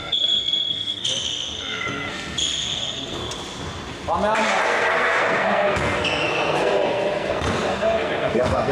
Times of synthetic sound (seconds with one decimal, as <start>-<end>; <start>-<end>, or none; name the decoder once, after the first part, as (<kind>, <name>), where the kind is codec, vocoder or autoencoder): 0.0-3.2 (codec, SNAC); 4.5-8.7